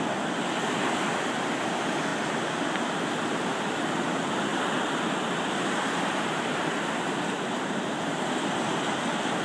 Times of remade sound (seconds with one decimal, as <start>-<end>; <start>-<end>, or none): 4.5-8.8